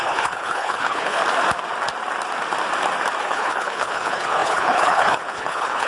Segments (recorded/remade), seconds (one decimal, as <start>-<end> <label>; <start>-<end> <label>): 0.0-1.2 remade; 1.2-3.2 recorded; 3.2-5.9 remade